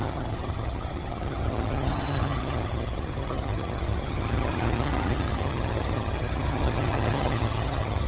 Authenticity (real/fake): fake